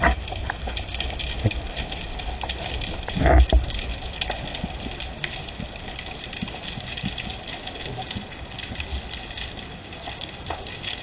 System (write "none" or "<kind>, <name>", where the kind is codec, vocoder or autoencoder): none